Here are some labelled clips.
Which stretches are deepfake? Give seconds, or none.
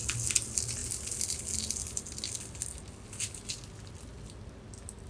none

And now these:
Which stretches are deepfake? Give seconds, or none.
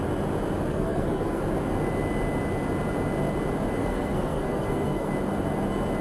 0.7-1.4 (codec, SNAC); 3.8-5.1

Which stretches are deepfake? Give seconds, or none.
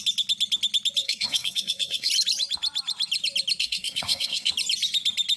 1.0-2.1 (codec, SNAC); 3.6-4.5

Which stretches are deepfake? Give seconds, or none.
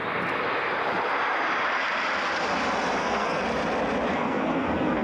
3.0-3.4 (codec, SNAC); 4.1-5.0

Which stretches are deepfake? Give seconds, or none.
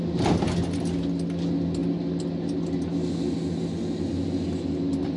none